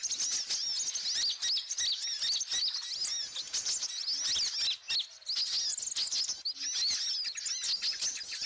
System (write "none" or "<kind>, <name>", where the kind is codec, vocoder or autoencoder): none